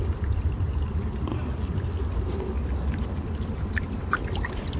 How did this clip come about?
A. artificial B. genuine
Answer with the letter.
B